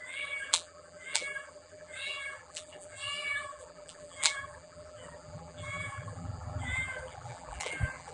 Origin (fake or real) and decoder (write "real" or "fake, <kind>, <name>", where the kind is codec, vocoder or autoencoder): fake, vocoder, BigVGAN v2